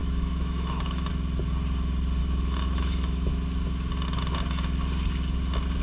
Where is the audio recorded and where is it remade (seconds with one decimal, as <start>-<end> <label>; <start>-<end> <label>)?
0.0-1.1 remade; 1.1-2.2 recorded; 2.2-3.3 remade; 3.3-5.8 recorded